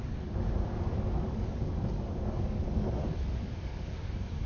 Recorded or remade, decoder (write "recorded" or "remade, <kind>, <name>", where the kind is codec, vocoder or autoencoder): remade, codec, DAC